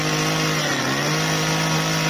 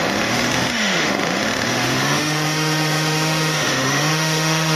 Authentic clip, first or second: first